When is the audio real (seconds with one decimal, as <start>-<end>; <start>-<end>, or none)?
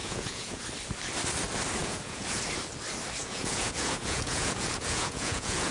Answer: 0.6-1.8; 2.4-3.2